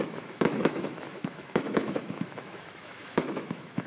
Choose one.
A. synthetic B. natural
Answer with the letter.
A